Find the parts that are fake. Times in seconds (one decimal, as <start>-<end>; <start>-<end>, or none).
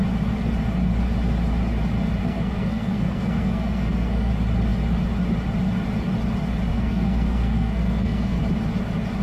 2.2-4.3; 6.7-8.4